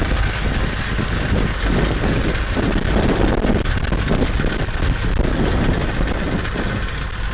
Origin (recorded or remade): recorded